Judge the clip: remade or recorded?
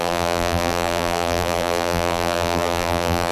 remade